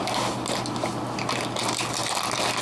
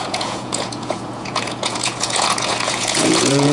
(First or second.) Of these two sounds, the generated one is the second